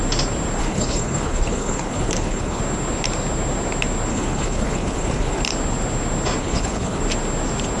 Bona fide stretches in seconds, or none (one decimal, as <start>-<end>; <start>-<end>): 0.0-0.6; 2.6-4.1; 5.4-6.4; 7.0-7.8